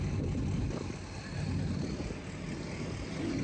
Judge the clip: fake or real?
real